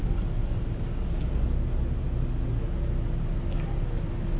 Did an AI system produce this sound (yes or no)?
no